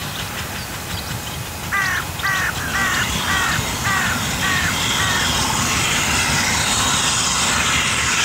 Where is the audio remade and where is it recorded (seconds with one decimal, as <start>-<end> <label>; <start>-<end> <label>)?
0.0-0.7 remade; 0.7-8.2 recorded